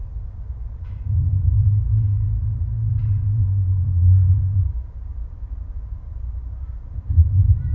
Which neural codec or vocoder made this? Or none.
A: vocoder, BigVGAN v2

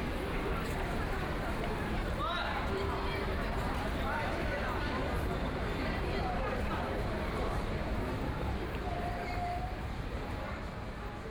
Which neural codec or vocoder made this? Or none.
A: vocoder, BigVGAN v2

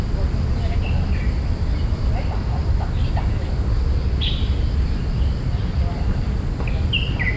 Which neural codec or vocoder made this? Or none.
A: none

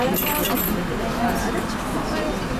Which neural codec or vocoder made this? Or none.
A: none